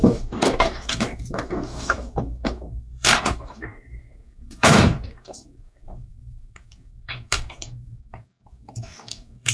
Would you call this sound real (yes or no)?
no